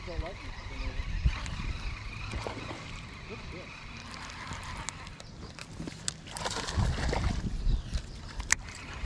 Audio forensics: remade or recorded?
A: recorded